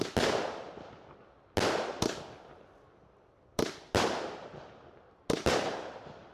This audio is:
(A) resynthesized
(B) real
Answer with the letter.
B